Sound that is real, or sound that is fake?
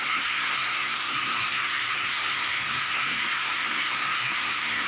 fake